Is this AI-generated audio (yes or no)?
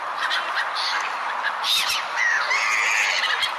no